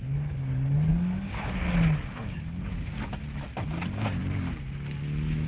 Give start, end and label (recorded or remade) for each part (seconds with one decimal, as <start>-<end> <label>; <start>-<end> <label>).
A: 0.0-5.5 recorded